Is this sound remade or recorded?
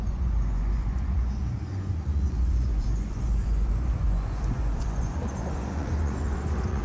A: remade